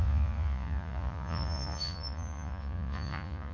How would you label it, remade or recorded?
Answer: remade